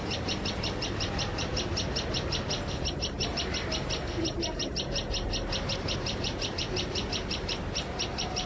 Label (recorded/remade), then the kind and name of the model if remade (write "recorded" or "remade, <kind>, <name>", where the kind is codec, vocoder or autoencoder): recorded